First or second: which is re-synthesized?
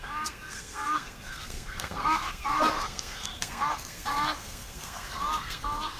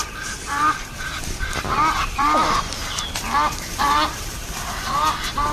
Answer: first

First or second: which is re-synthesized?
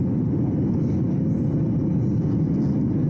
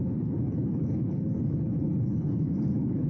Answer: second